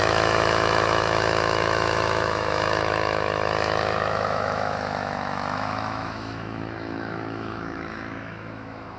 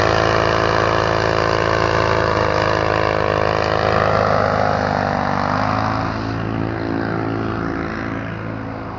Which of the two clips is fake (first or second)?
first